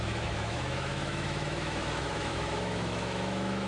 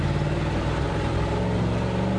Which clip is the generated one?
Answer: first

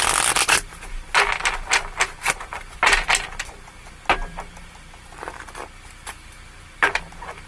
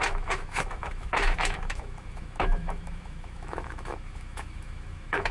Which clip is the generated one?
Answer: second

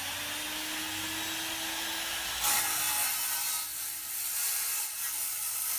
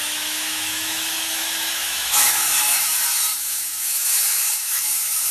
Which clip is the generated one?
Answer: second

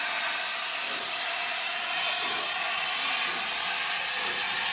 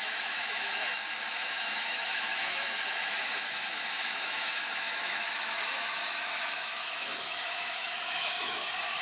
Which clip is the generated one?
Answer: second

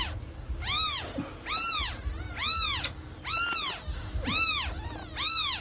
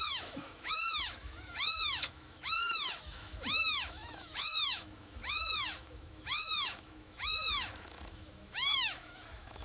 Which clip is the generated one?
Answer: second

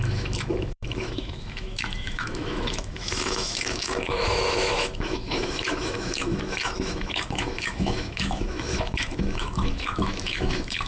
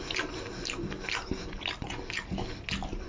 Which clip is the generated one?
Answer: first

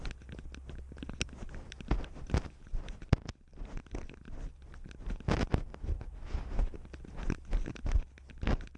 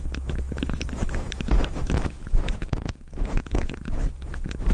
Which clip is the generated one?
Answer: second